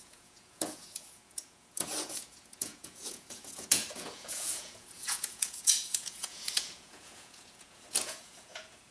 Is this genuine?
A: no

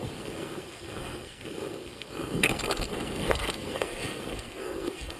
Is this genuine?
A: no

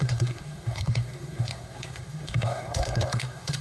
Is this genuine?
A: no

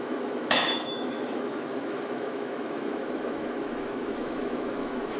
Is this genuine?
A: no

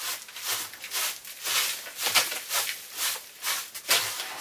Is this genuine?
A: yes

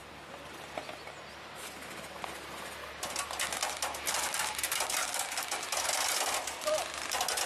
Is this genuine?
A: yes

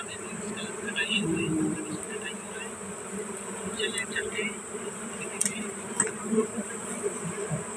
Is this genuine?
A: yes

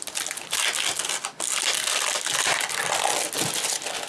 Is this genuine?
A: yes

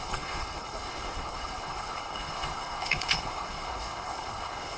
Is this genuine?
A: no